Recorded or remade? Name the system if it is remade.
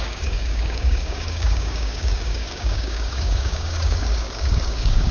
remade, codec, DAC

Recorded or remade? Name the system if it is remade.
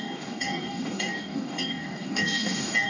remade, codec, DAC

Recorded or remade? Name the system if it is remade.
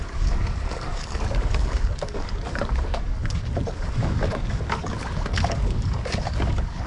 remade, codec, DAC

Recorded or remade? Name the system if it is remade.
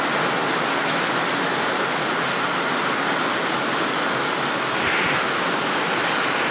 recorded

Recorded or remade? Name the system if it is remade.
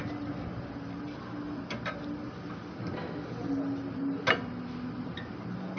recorded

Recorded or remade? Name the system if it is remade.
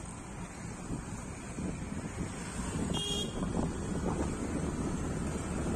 recorded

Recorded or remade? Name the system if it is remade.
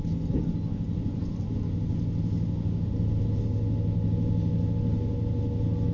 recorded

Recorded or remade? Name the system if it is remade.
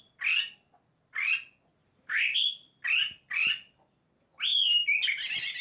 recorded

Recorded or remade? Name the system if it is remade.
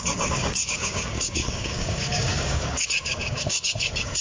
remade, codec, DAC